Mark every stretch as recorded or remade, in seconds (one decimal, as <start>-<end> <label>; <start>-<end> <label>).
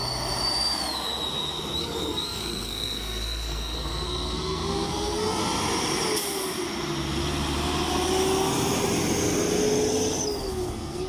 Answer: 0.0-1.8 recorded; 1.8-5.4 remade; 5.4-10.4 recorded; 10.4-11.1 remade